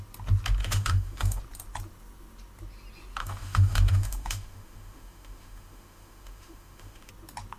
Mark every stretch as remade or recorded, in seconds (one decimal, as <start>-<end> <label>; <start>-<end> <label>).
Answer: 0.0-0.6 recorded; 0.6-1.4 remade; 1.4-3.2 recorded; 3.2-7.1 remade; 7.1-7.6 recorded